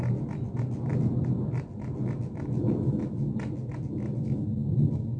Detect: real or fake real